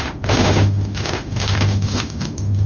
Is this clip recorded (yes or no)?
no